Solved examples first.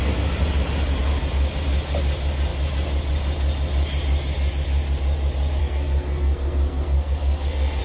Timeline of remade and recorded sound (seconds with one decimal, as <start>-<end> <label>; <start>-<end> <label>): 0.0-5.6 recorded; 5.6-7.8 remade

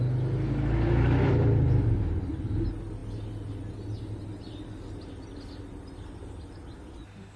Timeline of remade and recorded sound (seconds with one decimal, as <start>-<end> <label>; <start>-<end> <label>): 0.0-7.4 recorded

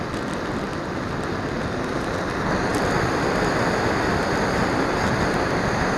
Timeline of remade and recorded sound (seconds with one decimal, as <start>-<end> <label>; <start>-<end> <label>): 0.0-6.0 recorded